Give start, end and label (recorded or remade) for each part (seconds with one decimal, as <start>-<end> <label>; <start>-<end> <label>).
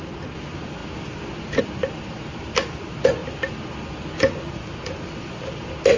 0.0-6.0 recorded